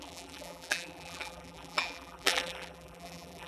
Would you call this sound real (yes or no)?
no